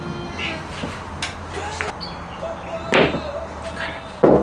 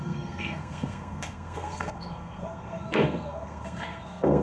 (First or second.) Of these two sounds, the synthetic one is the second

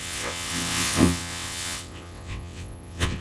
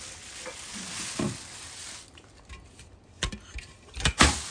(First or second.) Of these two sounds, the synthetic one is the first